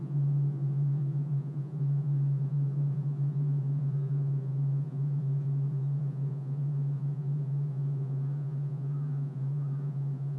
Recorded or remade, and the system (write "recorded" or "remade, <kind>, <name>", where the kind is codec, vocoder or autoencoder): remade, vocoder, Vocos